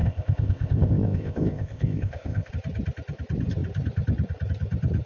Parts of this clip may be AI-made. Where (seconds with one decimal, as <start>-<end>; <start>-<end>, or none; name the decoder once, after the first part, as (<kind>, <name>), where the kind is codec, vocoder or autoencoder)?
0.0-2.5 (codec, ZipCodec)